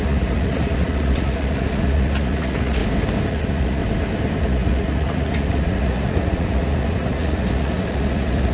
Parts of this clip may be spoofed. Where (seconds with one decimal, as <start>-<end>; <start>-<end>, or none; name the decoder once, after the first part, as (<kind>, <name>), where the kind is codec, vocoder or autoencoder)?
0.0-2.8 (vocoder, Vocos); 3.3-3.8; 4.4-8.5